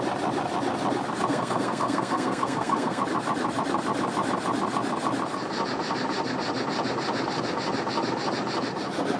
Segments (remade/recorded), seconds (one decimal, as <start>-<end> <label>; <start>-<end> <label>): 0.0-1.3 recorded; 1.3-3.0 remade; 3.0-9.2 recorded